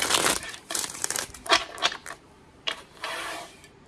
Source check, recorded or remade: remade